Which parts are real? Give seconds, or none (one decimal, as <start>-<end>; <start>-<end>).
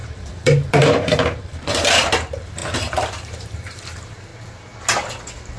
4.3-5.6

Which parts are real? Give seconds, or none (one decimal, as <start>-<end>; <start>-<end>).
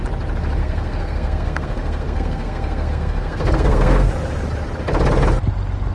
0.0-0.6; 4.1-5.9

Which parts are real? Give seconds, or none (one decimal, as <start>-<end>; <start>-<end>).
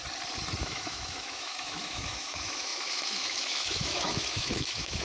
0.0-0.6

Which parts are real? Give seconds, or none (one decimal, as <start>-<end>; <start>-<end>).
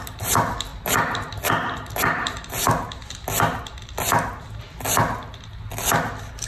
0.0-6.5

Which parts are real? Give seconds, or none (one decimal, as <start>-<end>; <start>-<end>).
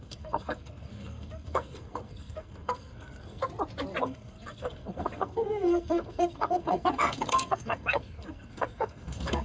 3.4-4.0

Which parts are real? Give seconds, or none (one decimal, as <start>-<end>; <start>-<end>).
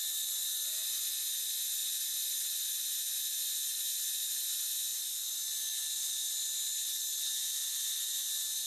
0.0-8.7